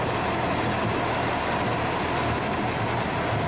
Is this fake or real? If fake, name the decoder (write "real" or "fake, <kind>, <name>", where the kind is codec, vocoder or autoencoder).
real